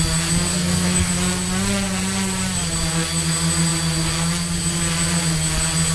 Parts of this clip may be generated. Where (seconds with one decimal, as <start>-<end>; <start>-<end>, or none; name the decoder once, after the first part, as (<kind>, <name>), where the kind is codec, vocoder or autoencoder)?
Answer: 0.5-1.1 (codec, SNAC)